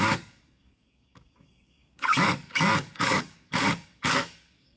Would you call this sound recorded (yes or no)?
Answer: no